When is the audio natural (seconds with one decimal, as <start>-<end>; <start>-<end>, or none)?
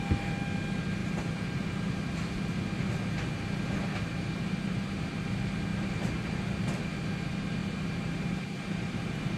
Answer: 0.0-1.0; 1.9-4.1; 5.2-5.7; 6.4-7.6